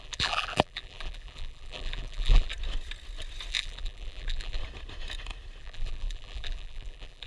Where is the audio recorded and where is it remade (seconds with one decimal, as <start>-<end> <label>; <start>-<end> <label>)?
0.0-2.5 remade; 2.5-3.5 recorded; 3.5-4.6 remade; 4.6-5.6 recorded; 5.6-7.3 remade